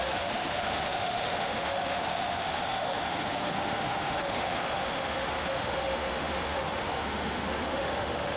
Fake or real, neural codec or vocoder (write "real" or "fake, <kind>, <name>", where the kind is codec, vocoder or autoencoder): fake, autoencoder, DAC-VAE